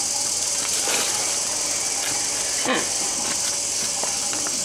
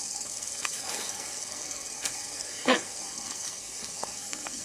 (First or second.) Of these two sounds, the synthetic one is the second